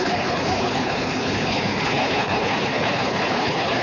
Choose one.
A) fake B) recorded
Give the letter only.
A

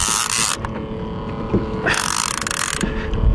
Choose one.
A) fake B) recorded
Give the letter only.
B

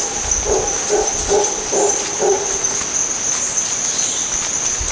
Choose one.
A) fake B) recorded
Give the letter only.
B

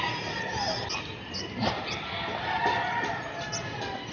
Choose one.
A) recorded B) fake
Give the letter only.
A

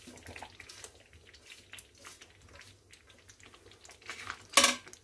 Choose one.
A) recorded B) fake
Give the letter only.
A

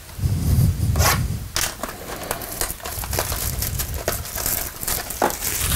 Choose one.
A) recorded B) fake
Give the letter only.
A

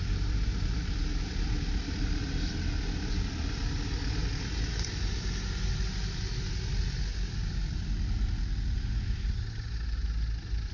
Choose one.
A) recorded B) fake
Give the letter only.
A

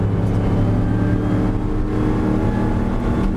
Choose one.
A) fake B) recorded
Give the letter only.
B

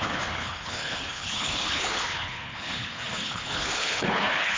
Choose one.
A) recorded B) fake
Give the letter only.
B